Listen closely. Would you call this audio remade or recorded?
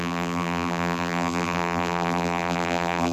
remade